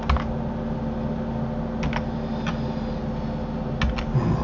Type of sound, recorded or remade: recorded